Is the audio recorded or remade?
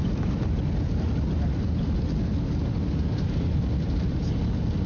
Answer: recorded